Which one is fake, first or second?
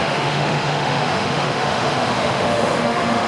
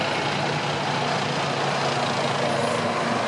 first